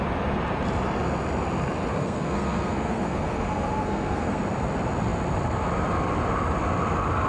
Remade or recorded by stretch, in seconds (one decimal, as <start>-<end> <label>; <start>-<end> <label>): 0.0-1.9 recorded; 1.9-4.4 remade; 4.4-7.3 recorded